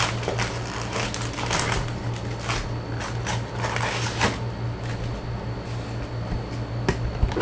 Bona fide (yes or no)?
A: yes